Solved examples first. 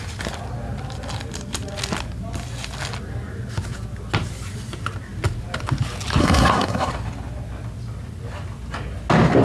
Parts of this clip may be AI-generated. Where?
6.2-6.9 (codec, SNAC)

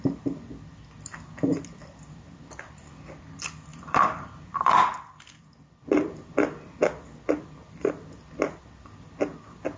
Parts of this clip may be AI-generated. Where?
3.7-4.8 (vocoder, BigVGAN v2)